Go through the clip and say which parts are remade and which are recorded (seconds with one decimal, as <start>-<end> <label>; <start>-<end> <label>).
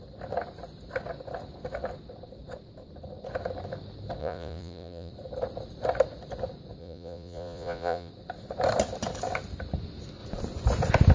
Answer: 0.0-4.2 recorded; 4.2-5.1 remade; 5.1-6.8 recorded; 6.8-8.1 remade; 8.1-11.1 recorded